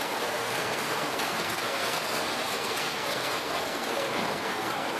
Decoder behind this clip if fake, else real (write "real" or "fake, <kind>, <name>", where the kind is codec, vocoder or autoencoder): fake, codec, SNAC